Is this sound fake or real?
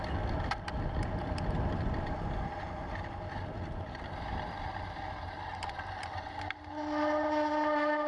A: real